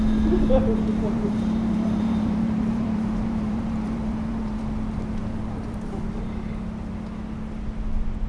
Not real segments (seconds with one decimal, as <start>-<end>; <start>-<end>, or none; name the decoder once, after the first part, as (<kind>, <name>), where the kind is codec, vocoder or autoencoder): 0.9-4.6 (vocoder, BigVGAN v2); 5.2-6.2